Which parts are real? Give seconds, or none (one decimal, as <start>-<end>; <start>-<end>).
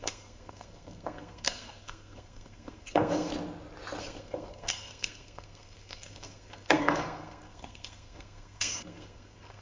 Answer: 3.3-4.0